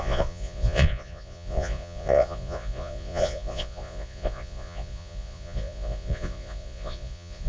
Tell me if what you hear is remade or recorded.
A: remade